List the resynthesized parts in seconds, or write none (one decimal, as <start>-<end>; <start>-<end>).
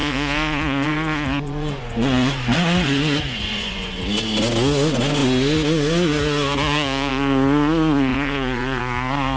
0.0-4.0; 8.1-8.8